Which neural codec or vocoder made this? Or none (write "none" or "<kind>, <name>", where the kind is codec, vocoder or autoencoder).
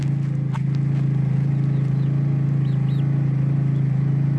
none